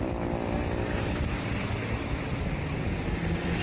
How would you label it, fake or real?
real